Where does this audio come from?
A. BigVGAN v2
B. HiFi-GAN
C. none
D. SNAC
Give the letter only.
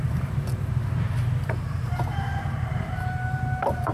A